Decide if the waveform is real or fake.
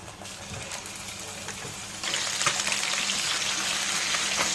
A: fake